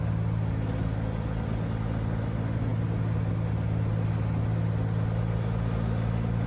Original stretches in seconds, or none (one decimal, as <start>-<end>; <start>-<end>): 0.0-6.5